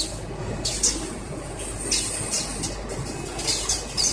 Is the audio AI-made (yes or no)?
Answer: no